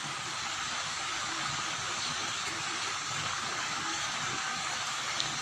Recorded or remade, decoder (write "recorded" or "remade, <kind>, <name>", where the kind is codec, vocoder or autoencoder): remade, codec, DAC